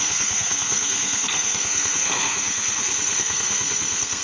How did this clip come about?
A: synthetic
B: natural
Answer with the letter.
A